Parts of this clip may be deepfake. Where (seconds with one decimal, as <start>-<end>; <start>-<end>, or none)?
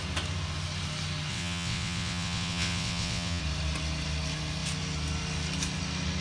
1.3-3.4